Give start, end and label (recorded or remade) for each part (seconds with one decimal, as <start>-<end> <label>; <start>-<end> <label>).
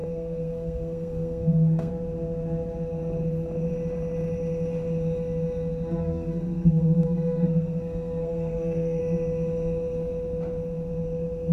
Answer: 0.0-1.9 remade; 1.9-6.0 recorded; 6.0-9.0 remade; 9.0-11.5 recorded